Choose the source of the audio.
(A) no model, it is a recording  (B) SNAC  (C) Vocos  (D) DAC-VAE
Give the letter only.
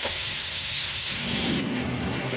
B